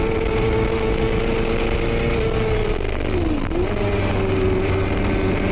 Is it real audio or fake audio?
real